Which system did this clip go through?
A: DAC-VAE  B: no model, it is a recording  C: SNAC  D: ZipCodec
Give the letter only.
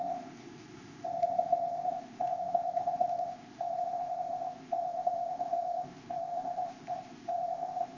D